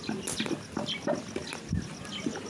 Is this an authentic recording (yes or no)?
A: yes